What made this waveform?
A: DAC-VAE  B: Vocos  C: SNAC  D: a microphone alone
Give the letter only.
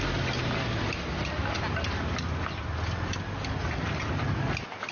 D